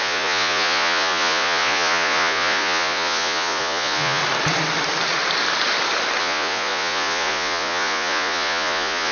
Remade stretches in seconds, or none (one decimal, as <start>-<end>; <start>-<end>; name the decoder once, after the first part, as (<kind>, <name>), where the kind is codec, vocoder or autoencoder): 0.0-4.2 (vocoder, Vocos); 6.2-9.1